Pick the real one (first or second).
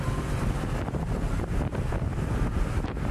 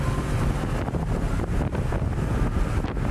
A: second